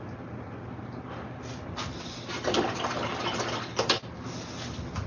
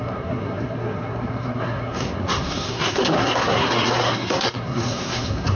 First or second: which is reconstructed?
second